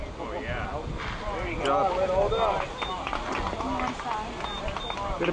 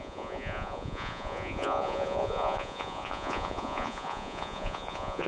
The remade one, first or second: second